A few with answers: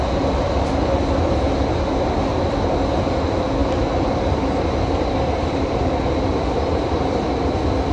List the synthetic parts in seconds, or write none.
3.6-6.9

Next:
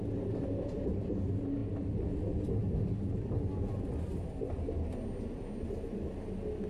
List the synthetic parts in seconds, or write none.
none

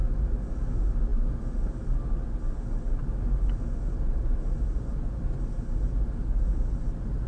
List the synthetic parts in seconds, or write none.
none